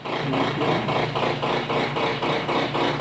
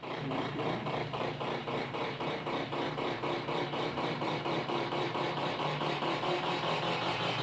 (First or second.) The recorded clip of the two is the first